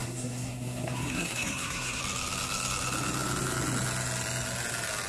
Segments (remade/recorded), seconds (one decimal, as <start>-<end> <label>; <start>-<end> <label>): 0.0-2.0 remade; 2.0-5.1 recorded